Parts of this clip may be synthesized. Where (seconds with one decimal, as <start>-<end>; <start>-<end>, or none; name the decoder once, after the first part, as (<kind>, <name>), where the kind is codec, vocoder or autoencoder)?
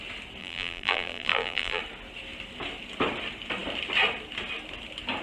0.4-1.8 (vocoder, BigVGAN v2)